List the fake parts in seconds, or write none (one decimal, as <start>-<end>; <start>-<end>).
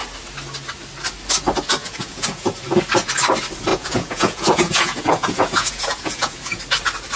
1.8-2.6; 3.7-6.6